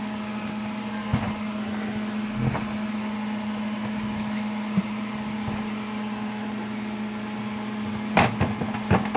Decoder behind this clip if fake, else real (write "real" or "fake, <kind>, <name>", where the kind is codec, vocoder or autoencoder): real